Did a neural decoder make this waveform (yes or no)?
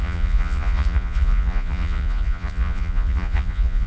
yes